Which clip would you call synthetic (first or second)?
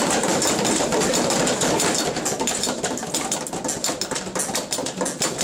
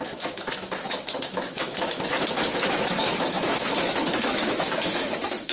second